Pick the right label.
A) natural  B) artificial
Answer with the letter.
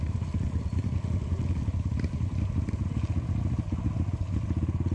A